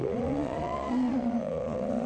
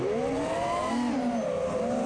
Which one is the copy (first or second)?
first